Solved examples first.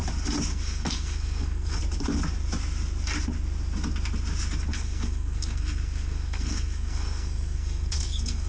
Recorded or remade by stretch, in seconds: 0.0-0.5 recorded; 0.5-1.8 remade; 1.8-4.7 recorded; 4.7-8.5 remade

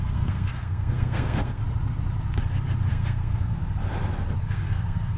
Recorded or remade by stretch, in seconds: 0.0-1.6 remade; 1.6-2.9 recorded; 2.9-3.6 remade; 3.6-4.4 recorded; 4.4-5.2 remade

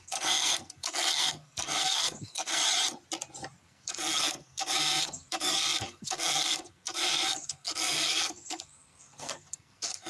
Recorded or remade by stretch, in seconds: 0.0-2.6 remade; 2.6-3.6 recorded; 3.6-10.1 remade

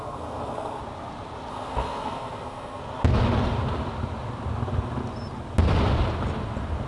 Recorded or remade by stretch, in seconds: 0.0-0.8 remade; 0.8-1.5 recorded; 1.5-2.8 remade; 2.8-6.9 recorded